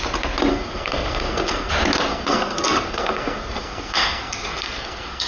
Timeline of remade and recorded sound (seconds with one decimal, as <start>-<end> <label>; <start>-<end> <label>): 0.0-0.5 recorded; 0.5-1.7 remade; 1.7-2.1 recorded; 2.1-5.3 remade